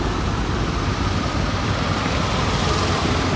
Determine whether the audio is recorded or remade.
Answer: recorded